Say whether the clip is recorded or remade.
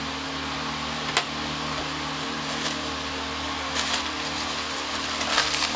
recorded